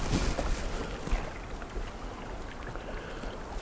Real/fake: real